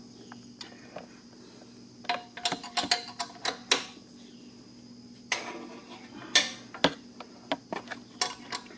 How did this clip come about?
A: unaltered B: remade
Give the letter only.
A